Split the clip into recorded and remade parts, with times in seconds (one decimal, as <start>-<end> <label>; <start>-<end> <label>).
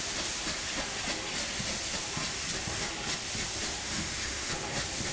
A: 0.0-3.8 recorded; 3.8-4.5 remade; 4.5-5.1 recorded